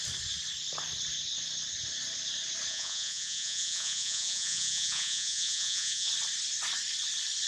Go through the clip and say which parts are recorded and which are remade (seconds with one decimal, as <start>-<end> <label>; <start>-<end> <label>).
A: 0.0-2.7 recorded; 2.7-6.1 remade; 6.1-7.5 recorded

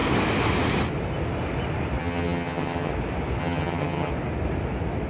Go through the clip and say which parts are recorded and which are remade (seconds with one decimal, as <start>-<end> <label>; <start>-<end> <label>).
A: 0.0-2.0 recorded; 2.0-2.9 remade; 2.9-3.4 recorded; 3.4-4.1 remade; 4.1-5.1 recorded

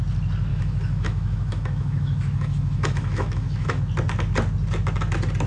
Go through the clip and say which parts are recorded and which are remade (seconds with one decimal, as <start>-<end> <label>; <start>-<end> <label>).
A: 0.0-0.5 recorded; 0.5-3.8 remade; 3.8-5.5 recorded

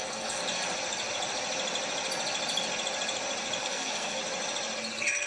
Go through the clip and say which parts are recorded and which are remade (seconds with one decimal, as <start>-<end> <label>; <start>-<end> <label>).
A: 0.0-0.4 remade; 0.4-3.6 recorded; 3.6-4.2 remade; 4.2-5.3 recorded

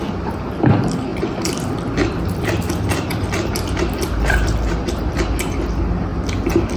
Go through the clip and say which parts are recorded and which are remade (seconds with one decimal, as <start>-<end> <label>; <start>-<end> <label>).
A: 0.0-1.1 recorded; 1.1-5.2 remade; 5.2-6.8 recorded